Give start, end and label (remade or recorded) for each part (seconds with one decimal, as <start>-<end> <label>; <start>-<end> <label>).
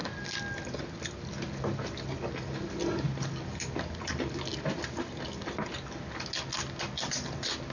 0.0-7.7 recorded